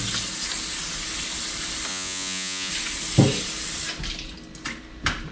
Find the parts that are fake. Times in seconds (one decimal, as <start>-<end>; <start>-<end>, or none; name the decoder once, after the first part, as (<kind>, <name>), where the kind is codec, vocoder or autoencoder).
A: 1.9-2.7 (vocoder, Vocos)